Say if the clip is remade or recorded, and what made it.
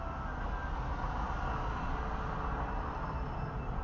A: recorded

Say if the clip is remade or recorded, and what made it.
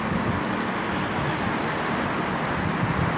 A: recorded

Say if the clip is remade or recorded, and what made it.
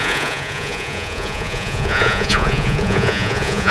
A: remade, vocoder, Vocos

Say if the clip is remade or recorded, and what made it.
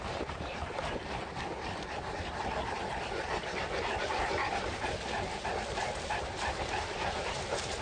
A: recorded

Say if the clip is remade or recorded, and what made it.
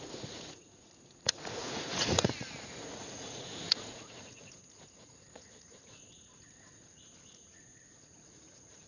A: remade, vocoder, Vocos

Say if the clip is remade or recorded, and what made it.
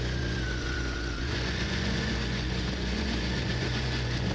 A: remade, vocoder, Vocos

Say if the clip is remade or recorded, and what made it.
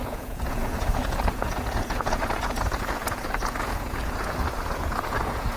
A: remade, vocoder, Vocos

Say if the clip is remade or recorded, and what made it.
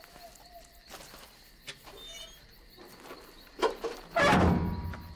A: recorded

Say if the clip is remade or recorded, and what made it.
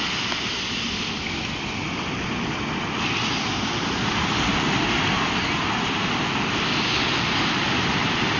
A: recorded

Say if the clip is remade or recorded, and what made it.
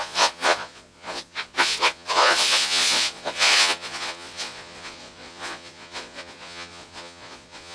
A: remade, vocoder, Vocos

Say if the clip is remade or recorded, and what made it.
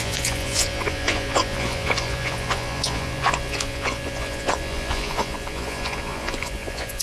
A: remade, vocoder, Vocos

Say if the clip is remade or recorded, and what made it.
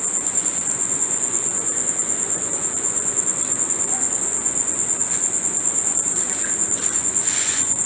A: remade, vocoder, Vocos